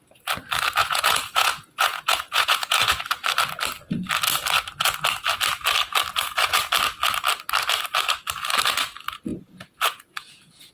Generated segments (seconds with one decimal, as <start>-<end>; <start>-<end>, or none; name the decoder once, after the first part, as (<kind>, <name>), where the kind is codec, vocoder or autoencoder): 0.8-3.0 (vocoder, Vocos); 6.1-6.6; 9.3-10.7